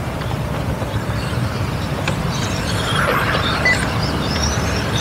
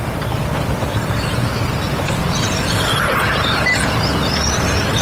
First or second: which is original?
second